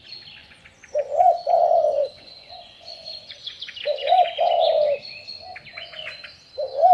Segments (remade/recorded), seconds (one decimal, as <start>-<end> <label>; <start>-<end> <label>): 0.0-0.4 recorded; 0.4-4.5 remade; 4.5-5.7 recorded; 5.7-6.2 remade; 6.2-6.9 recorded